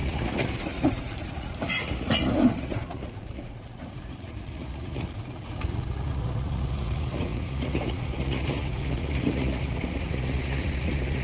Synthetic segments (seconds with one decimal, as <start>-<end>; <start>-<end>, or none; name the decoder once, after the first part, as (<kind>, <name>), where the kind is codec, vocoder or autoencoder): 0.0-11.2 (vocoder, Vocos)